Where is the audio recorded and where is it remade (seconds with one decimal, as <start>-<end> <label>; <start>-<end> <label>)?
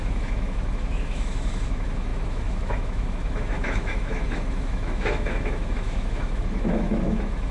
0.0-7.5 remade